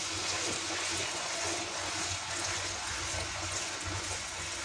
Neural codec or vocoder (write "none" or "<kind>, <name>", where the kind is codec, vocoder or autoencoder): vocoder, Vocos